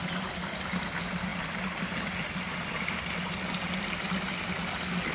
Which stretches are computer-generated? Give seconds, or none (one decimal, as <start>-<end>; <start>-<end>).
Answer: none